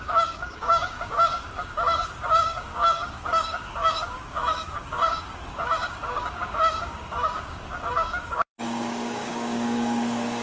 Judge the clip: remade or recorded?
remade